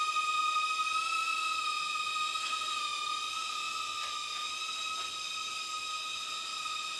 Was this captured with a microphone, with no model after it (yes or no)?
yes